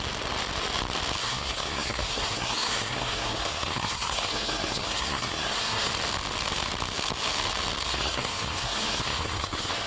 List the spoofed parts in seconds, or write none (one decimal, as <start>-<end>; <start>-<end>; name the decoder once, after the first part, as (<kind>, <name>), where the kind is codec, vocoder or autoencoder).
1.2-5.9 (codec, SNAC); 7.9-9.9